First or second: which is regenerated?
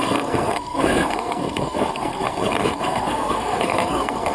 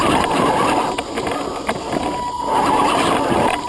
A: first